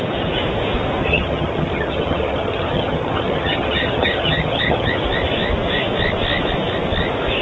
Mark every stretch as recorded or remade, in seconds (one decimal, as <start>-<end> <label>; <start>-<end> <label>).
0.0-1.0 recorded; 1.0-4.9 remade; 4.9-7.4 recorded